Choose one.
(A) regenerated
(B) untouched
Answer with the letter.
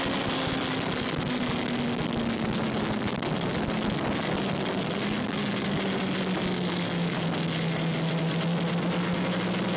B